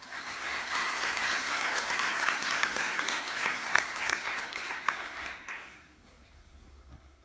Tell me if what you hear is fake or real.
fake